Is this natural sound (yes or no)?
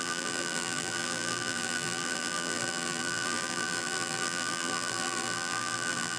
no